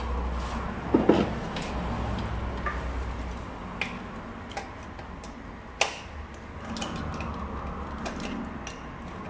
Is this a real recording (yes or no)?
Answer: yes